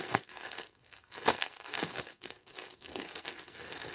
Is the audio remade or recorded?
remade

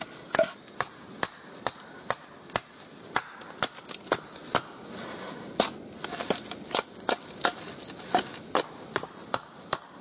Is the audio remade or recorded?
recorded